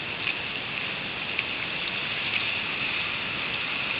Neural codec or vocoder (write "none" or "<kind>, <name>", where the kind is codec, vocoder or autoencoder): none